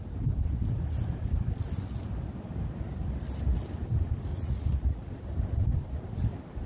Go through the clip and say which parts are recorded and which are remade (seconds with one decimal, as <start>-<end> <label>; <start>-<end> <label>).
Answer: 0.0-4.3 recorded; 4.3-5.1 remade; 5.1-6.7 recorded